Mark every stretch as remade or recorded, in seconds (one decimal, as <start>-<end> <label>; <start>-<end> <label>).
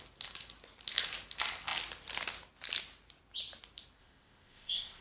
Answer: 0.0-4.0 recorded; 4.0-5.0 remade